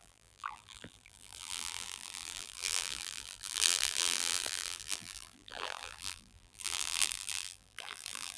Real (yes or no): no